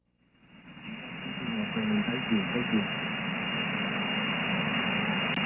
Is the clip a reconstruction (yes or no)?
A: no